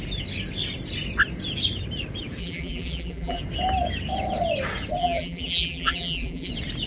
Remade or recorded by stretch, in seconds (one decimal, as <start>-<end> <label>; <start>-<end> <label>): 0.0-2.4 recorded; 2.4-3.4 remade; 3.4-5.0 recorded; 5.0-6.5 remade; 6.5-6.9 recorded